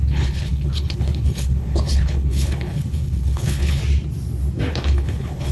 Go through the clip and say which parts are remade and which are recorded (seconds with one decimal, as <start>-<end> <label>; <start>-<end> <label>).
0.0-3.8 remade; 3.8-4.7 recorded; 4.7-5.5 remade